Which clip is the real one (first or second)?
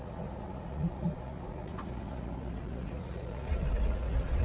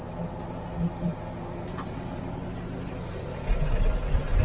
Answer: second